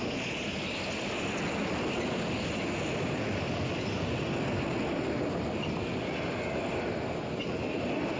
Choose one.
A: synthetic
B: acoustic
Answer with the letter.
B